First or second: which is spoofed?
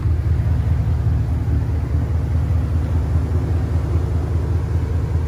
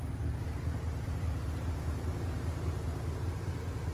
second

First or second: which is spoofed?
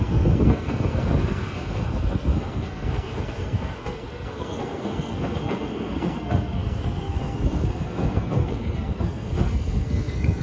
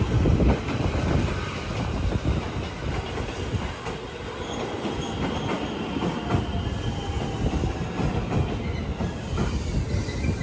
first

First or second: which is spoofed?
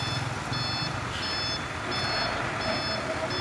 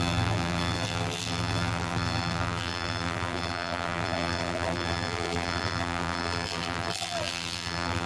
second